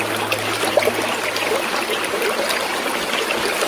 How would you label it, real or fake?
real